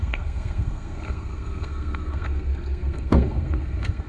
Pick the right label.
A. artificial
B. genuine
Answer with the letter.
A